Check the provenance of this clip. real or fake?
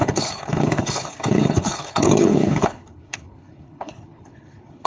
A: fake